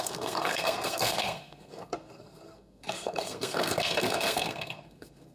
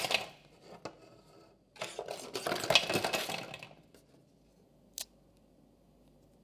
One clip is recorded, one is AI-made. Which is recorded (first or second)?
second